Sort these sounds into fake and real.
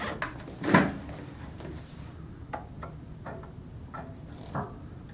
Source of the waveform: real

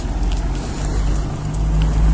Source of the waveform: real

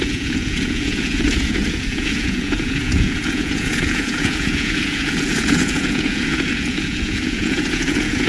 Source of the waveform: fake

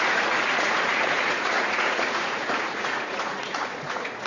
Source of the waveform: fake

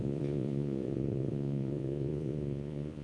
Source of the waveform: fake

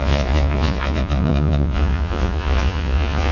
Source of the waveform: fake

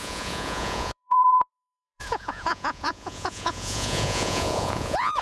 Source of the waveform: fake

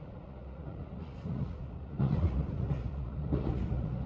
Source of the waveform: fake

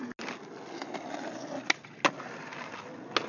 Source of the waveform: real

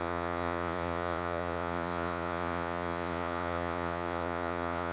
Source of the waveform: fake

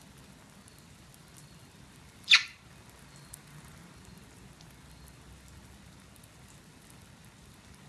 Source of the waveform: real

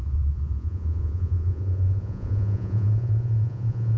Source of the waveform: fake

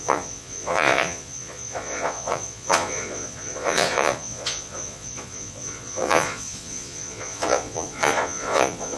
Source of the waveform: fake